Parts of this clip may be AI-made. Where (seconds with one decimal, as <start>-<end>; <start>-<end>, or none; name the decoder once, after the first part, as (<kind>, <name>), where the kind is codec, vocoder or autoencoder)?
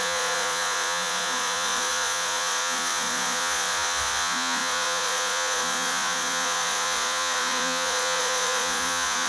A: 0.0-9.3 (vocoder, Vocos)